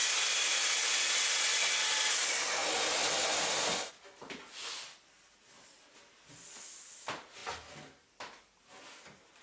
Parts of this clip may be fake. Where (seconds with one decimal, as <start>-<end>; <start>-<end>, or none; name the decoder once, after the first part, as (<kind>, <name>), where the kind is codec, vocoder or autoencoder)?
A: none